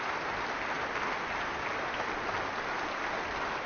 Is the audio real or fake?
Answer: real